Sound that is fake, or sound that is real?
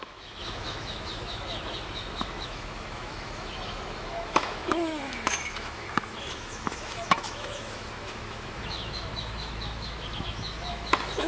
fake